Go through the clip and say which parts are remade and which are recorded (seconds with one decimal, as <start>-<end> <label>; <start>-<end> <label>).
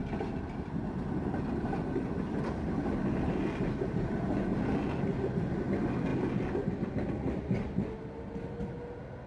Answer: 0.0-9.3 recorded